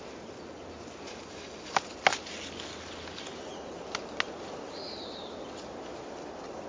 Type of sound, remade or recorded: recorded